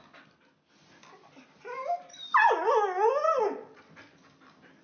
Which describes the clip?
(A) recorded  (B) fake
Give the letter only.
A